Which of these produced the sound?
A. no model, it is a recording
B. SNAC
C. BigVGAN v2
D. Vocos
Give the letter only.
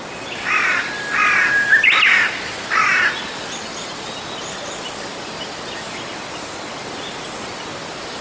A